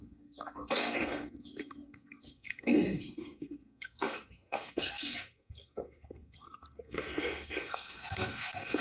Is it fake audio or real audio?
fake